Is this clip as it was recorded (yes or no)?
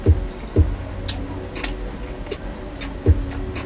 yes